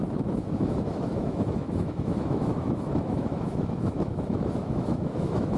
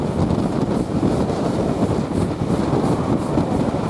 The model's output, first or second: first